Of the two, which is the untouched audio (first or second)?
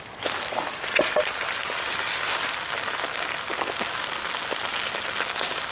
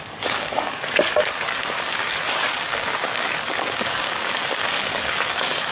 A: first